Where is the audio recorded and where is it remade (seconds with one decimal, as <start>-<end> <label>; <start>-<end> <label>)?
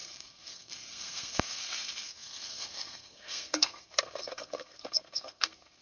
0.0-5.8 remade